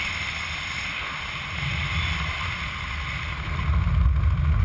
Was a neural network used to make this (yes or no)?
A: no